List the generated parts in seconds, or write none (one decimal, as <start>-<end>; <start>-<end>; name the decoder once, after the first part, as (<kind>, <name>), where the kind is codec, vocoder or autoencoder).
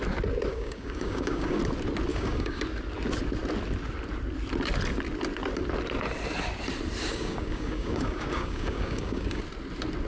0.5-1.6 (codec, DAC); 2.1-2.6; 7.1-9.4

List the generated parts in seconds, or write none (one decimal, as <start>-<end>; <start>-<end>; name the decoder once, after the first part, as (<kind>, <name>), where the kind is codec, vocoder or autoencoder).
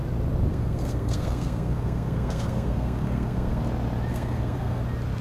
0.5-3.6 (codec, SNAC); 4.1-4.8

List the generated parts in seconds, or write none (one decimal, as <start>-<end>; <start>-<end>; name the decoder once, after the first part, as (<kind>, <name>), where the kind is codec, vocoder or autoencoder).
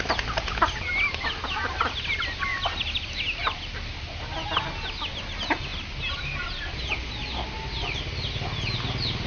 none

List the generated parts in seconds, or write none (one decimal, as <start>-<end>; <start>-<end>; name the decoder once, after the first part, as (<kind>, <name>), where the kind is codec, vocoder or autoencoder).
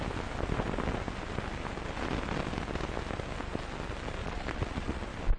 4.2-5.0 (vocoder, Vocos)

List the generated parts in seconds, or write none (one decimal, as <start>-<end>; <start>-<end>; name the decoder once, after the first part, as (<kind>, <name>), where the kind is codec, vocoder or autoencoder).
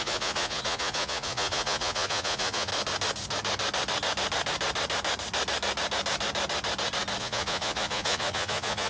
0.0-2.7 (vocoder, Vocos); 7.2-8.9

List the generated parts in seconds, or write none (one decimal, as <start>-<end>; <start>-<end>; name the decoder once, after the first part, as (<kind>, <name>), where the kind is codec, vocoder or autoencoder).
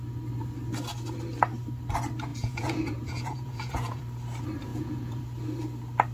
2.3-4.0 (vocoder, Vocos); 4.7-5.2